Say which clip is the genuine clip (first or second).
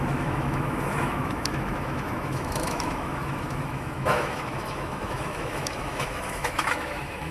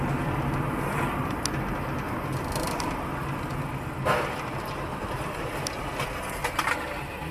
second